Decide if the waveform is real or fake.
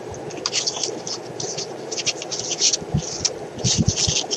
real